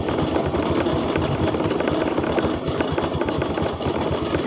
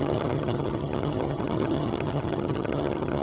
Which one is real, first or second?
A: first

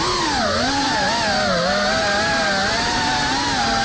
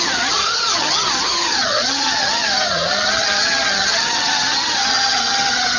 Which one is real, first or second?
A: first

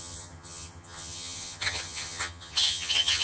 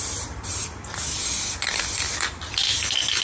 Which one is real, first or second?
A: second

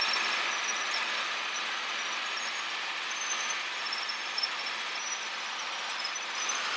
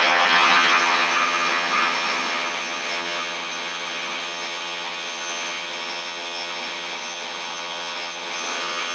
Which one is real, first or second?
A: first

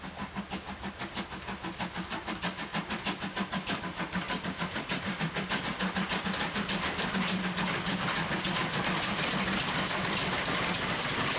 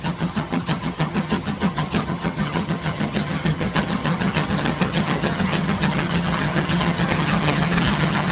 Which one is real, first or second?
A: first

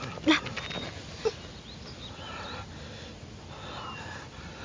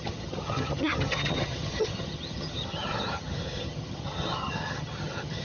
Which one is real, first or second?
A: first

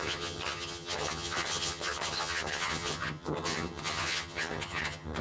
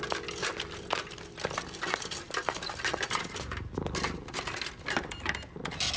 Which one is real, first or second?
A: second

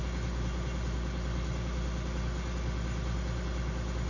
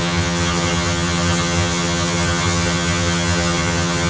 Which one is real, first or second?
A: first